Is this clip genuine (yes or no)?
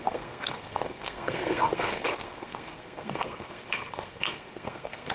no